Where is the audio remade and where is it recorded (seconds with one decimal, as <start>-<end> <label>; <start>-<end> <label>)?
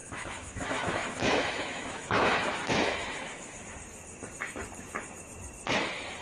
0.0-3.7 remade; 3.7-6.2 recorded